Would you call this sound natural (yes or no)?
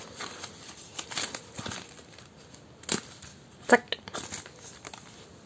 yes